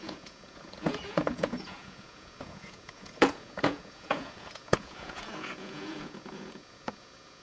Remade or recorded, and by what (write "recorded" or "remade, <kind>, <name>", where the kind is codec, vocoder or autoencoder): remade, vocoder, Vocos